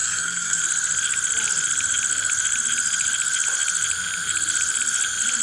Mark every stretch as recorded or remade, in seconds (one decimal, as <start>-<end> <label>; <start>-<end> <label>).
0.0-0.6 remade; 0.6-5.4 recorded